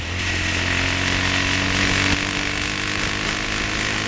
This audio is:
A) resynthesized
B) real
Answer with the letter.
B